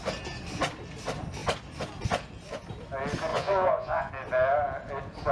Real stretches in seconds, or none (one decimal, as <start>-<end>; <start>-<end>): 0.0-3.3; 4.1-5.3